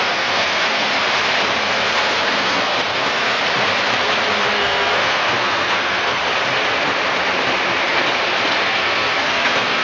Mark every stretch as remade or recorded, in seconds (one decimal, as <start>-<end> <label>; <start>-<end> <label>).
0.0-0.9 remade; 0.9-1.6 recorded; 1.6-3.4 remade; 3.4-4.5 recorded; 4.5-6.2 remade; 6.2-8.6 recorded; 8.6-9.8 remade